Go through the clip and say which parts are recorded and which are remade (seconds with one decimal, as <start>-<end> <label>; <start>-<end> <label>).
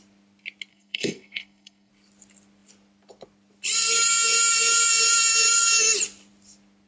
0.0-0.7 recorded; 0.7-1.9 remade; 1.9-6.9 recorded